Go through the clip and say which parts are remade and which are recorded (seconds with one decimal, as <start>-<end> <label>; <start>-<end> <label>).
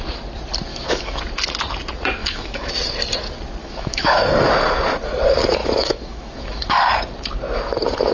0.0-0.7 recorded; 0.7-1.2 remade; 1.2-2.2 recorded; 2.2-2.7 remade; 2.7-3.6 recorded; 3.6-4.2 remade; 4.2-5.6 recorded; 5.6-6.6 remade; 6.6-8.1 recorded